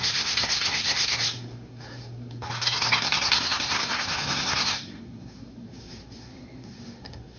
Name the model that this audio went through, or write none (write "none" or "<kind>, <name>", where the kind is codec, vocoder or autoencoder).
codec, SNAC